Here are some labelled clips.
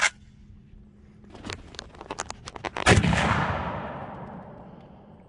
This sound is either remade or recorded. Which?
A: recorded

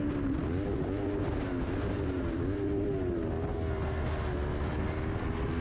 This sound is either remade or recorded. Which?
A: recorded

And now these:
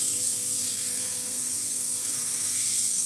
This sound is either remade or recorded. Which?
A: remade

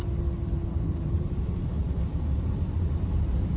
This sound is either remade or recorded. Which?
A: recorded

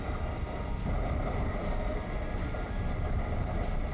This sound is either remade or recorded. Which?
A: recorded